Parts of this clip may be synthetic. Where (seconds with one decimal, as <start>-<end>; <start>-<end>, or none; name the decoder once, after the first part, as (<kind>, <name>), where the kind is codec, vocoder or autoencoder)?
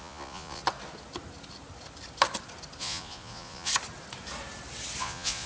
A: 0.0-0.6 (vocoder, Vocos); 2.8-3.7; 5.0-5.5